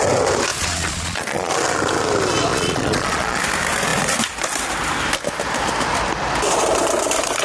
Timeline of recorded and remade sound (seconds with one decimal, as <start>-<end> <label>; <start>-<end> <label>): 0.0-0.5 recorded; 0.5-1.5 remade; 1.5-2.5 recorded; 2.5-3.4 remade; 3.4-7.4 recorded